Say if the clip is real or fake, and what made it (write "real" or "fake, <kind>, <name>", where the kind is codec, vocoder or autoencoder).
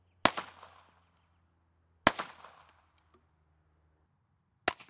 real